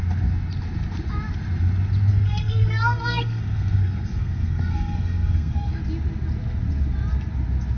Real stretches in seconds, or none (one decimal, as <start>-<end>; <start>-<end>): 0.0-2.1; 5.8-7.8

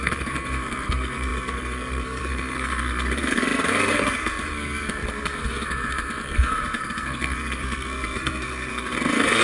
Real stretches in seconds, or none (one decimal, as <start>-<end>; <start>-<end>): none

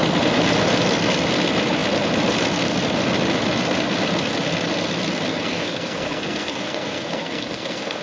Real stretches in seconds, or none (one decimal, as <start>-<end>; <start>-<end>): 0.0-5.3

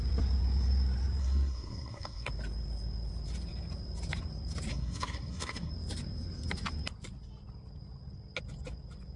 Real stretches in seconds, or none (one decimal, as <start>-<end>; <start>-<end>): 0.0-1.2; 2.3-4.7; 5.7-9.2

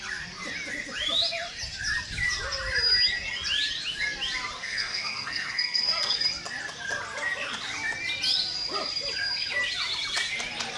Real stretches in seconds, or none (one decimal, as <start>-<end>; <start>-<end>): 0.0-4.6; 6.2-10.8

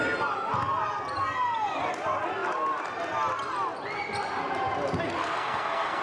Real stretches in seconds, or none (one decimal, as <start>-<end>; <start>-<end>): 0.0-5.2